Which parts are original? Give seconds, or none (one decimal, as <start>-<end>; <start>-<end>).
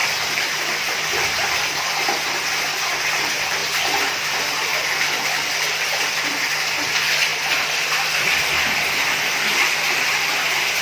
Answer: 0.9-4.7; 6.0-7.3; 10.2-10.8